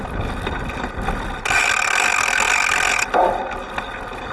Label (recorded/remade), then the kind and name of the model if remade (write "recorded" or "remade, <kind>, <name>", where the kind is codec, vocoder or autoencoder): recorded